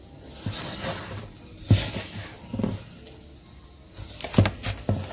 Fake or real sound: real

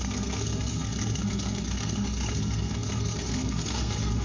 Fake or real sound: fake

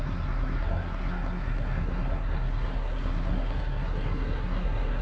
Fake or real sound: fake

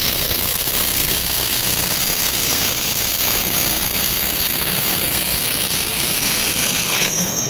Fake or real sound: fake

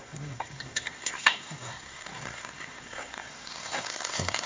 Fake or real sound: fake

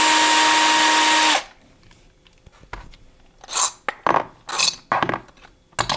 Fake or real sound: real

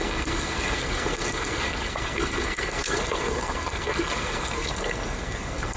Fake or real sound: fake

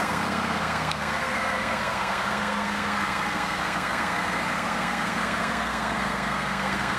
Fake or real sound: fake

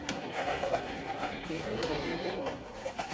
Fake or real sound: fake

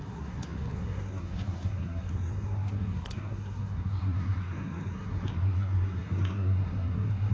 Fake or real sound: fake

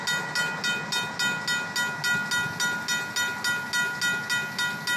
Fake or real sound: real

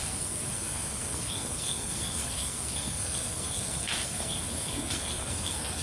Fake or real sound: fake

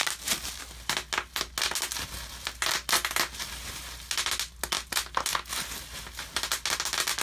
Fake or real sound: real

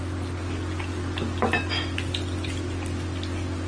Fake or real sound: real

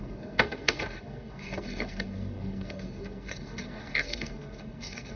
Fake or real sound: fake